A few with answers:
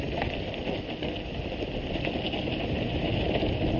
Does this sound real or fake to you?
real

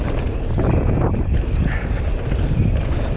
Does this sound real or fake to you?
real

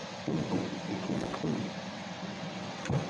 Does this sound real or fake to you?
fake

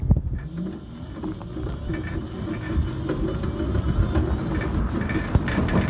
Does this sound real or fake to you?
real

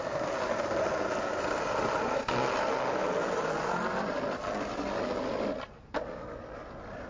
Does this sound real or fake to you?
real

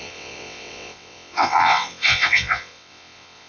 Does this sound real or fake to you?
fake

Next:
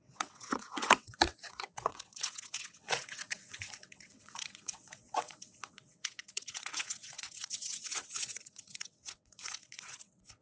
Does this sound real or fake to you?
fake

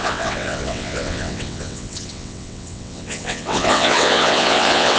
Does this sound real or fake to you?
fake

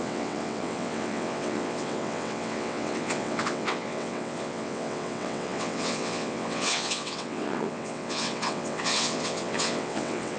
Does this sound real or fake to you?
fake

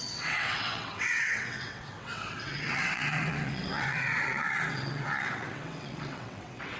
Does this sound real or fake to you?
fake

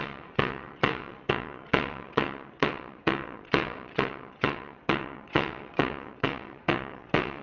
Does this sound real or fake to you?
fake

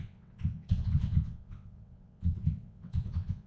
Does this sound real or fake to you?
fake